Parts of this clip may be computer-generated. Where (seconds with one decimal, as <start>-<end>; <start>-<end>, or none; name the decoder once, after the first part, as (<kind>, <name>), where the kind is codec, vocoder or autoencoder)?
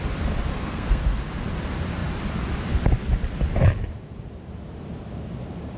0.5-1.0 (codec, SNAC)